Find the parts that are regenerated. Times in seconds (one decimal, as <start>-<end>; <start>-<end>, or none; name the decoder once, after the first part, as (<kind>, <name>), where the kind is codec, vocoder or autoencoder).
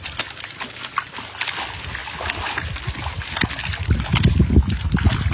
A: none